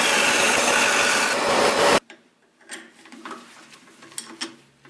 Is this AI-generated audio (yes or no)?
no